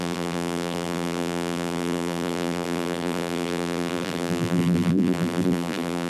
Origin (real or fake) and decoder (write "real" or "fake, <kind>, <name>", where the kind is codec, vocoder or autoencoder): fake, vocoder, BigVGAN v2